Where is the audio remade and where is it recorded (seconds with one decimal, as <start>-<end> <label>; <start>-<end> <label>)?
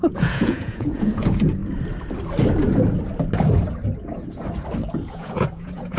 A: 0.0-1.6 remade; 1.6-5.1 recorded; 5.1-6.0 remade